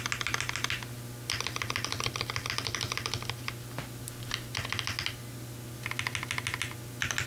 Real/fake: real